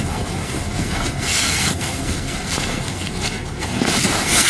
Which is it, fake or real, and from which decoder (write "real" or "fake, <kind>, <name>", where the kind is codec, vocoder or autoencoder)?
fake, codec, SNAC